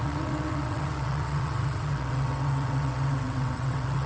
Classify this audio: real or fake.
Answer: fake